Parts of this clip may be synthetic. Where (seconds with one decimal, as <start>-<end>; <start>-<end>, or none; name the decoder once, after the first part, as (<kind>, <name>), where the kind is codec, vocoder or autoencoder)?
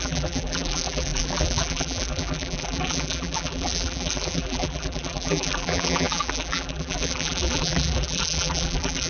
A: 0.0-9.1 (vocoder, BigVGAN v2)